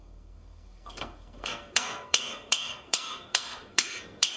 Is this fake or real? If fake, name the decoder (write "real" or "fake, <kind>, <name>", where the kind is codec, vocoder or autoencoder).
fake, codec, SNAC